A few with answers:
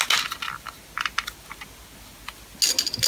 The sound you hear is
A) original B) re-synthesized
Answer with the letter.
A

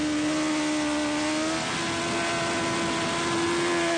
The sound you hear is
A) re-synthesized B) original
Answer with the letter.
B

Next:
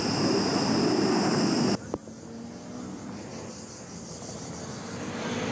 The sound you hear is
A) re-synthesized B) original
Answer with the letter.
B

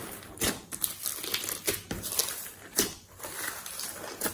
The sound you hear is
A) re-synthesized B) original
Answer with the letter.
B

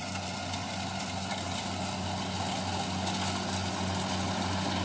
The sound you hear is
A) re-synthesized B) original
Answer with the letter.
B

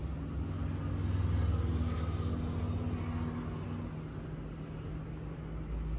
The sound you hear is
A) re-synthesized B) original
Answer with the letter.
B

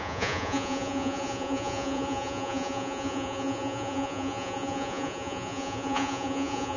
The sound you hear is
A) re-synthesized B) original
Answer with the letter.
A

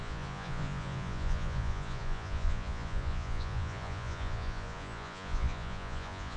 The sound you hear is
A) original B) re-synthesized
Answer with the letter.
B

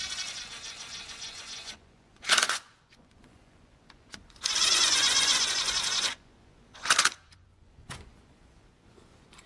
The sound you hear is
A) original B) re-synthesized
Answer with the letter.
B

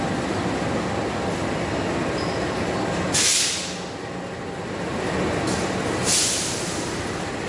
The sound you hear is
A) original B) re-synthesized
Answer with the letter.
A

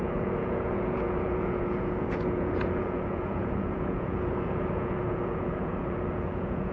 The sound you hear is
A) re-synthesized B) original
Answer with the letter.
A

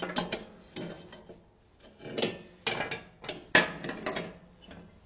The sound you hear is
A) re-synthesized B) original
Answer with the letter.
B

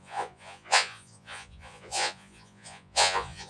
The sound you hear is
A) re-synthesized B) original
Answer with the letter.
A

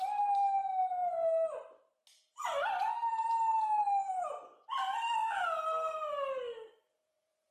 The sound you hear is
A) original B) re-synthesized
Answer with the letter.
A